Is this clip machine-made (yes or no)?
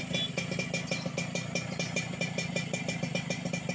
no